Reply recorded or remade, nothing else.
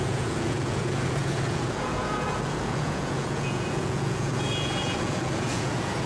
remade